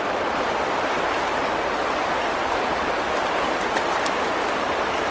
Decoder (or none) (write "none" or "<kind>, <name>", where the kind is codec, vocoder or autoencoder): none